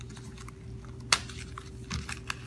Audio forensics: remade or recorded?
recorded